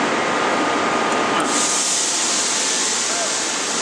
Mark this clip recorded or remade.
recorded